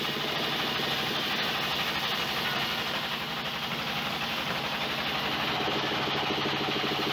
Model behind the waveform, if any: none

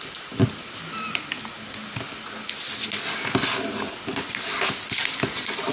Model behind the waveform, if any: none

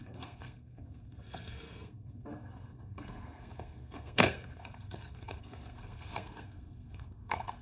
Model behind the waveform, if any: codec, SNAC